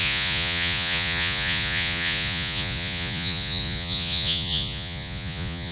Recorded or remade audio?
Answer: remade